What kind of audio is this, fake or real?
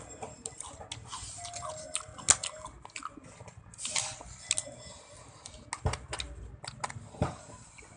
real